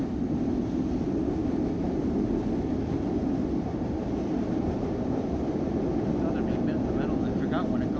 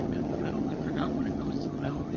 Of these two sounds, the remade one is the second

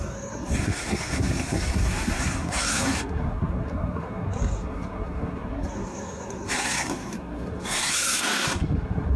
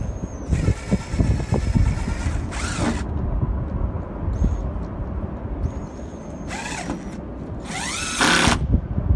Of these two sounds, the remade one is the first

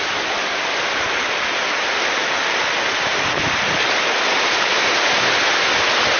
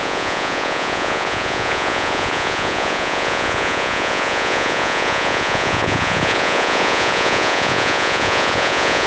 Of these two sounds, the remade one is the second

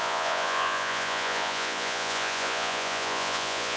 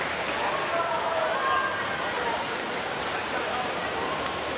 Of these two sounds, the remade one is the first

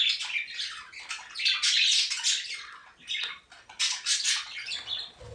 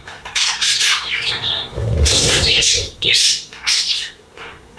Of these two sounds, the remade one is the second